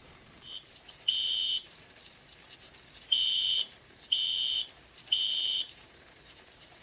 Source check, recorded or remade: remade